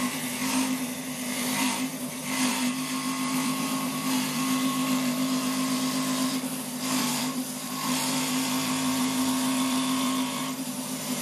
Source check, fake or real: fake